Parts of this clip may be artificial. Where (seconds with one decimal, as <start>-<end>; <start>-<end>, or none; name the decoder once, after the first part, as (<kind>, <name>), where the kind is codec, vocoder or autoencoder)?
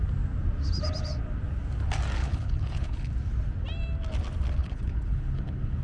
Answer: 2.2-3.1 (codec, HILCodec); 4.6-5.8